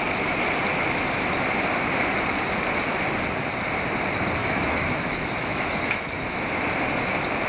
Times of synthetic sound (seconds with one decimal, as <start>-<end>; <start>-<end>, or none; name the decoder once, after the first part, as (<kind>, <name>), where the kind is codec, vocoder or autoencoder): 4.4-6.5 (autoencoder, DAC-VAE)